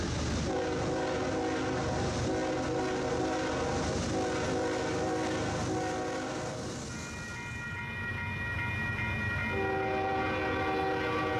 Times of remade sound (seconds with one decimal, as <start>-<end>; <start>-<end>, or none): none